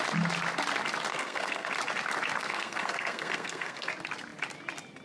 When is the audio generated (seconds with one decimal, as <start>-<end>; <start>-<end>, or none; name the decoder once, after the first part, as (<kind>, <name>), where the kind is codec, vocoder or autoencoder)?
1.1-1.7 (codec, SNAC); 2.4-3.9